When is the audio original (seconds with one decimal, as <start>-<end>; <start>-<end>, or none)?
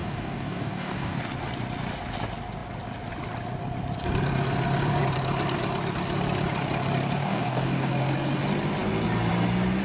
1.2-7.2; 7.9-9.8